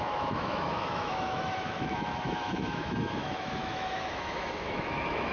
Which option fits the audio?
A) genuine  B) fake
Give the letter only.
B